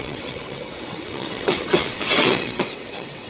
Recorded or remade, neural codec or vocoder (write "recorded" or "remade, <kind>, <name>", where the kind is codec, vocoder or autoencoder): remade, vocoder, WaveNeXt